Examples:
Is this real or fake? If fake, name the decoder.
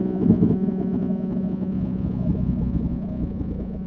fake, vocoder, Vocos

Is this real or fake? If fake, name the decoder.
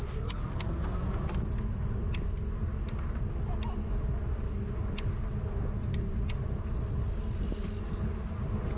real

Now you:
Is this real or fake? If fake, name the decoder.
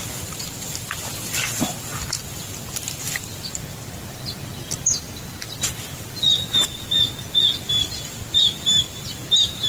real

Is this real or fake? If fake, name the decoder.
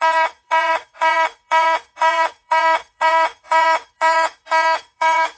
fake, vocoder, Vocos